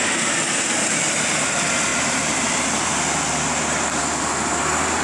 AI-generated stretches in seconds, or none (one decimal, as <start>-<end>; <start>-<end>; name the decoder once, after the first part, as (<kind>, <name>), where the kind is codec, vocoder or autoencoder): none